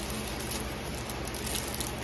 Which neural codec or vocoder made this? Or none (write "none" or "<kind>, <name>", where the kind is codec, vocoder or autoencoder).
none